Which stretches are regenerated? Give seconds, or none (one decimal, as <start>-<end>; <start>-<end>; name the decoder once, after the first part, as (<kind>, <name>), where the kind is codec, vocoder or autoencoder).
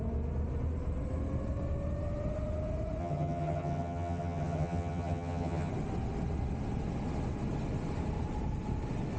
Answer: 3.0-5.7 (vocoder, HiFi-GAN)